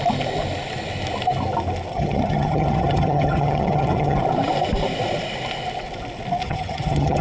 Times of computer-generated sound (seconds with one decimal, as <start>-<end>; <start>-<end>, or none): 1.9-4.2; 6.4-7.2